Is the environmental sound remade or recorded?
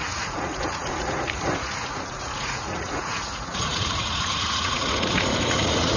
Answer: remade